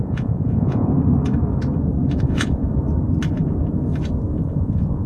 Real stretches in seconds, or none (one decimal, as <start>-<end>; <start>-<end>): 0.9-2.2; 2.6-4.4